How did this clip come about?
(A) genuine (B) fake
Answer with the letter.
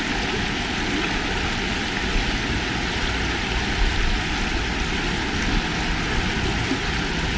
A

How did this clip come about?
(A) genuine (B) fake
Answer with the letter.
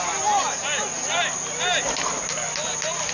A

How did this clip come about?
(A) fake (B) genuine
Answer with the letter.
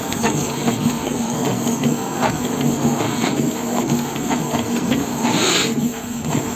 A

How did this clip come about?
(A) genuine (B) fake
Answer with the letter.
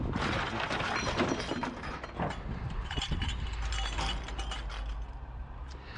A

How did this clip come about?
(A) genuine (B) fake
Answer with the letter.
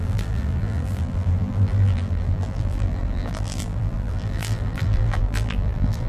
B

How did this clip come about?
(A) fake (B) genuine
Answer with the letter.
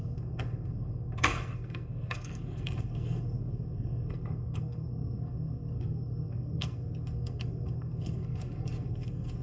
A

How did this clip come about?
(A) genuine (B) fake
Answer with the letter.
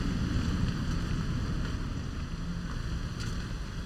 B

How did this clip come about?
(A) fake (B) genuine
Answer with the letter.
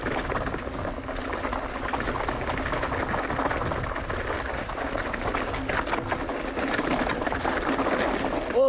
B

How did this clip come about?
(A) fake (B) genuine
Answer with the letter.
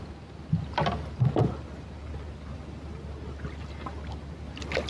B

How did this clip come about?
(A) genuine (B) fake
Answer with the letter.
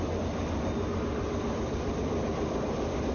A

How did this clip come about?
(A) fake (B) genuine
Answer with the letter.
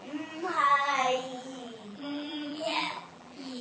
A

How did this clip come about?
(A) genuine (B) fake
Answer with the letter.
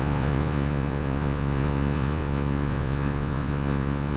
B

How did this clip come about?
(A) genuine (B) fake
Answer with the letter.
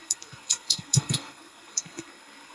B